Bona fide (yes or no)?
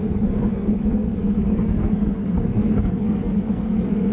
no